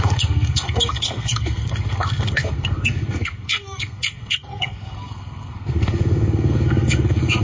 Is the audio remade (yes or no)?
yes